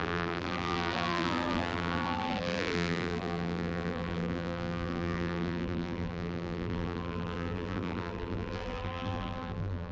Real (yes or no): no